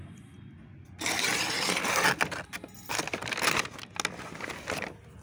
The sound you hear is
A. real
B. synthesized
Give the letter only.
A